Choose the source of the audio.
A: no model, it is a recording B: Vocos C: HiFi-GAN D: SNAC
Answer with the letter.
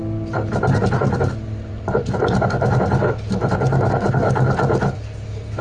A